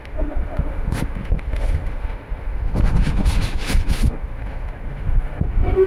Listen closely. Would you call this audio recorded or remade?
remade